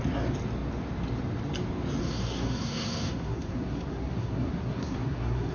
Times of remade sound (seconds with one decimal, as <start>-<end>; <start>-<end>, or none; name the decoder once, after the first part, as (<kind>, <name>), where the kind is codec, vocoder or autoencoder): 2.0-5.5 (codec, SNAC)